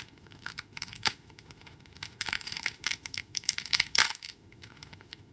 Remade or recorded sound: remade